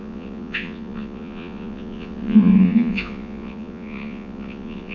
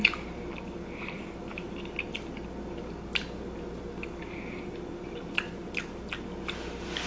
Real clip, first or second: second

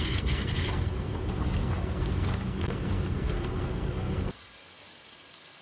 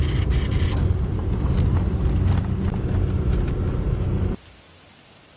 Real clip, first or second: second